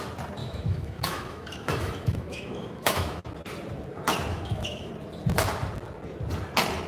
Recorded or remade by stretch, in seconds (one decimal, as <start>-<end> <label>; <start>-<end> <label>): 0.0-0.4 recorded; 0.4-3.3 remade; 3.3-4.3 recorded; 4.3-4.9 remade; 4.9-6.9 recorded